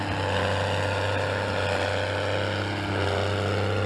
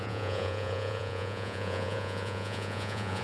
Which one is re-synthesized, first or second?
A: second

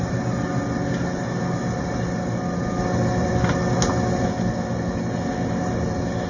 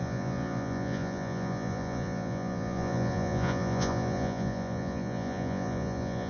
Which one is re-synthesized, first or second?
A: second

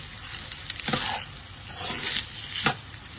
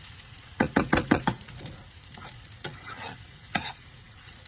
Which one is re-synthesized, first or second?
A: second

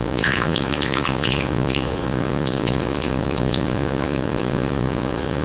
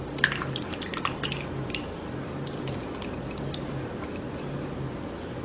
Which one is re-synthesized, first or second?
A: first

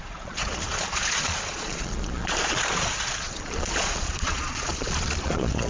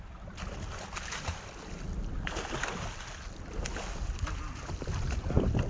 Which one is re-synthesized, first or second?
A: first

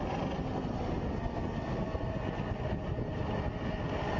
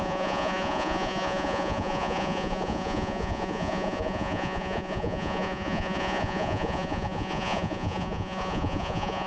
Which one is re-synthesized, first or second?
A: second